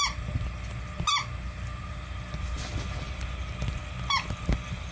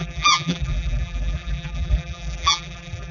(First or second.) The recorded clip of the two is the first